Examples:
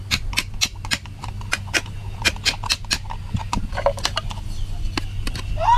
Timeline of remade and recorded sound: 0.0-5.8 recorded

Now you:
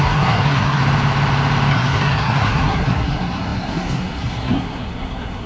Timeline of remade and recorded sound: 0.0-0.8 remade; 0.8-1.7 recorded; 1.7-5.5 remade

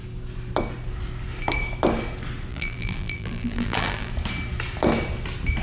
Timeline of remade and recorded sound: 0.0-2.5 recorded; 2.5-4.1 remade; 4.1-5.6 recorded